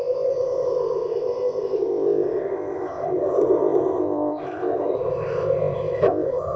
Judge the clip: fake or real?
fake